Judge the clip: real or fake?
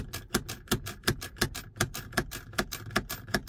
real